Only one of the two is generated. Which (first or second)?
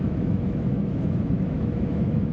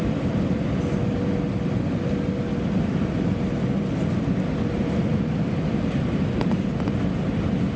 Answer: first